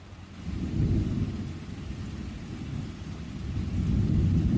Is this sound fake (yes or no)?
no